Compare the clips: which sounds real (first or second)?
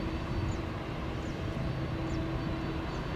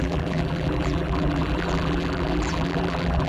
first